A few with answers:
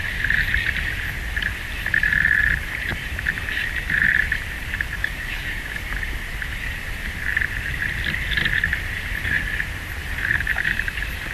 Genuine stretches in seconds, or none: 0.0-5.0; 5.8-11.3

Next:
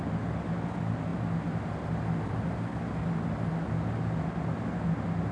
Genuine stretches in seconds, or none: 0.0-5.3